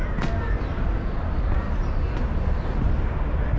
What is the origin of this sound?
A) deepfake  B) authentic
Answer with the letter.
B